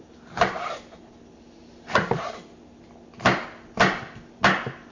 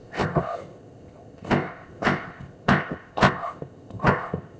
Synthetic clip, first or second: second